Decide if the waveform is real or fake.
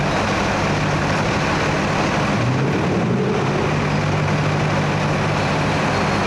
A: real